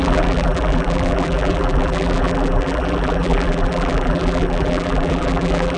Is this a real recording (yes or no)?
no